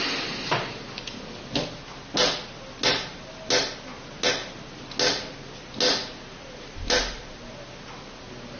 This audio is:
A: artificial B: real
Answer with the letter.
B